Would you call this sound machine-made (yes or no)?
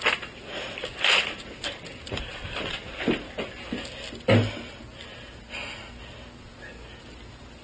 no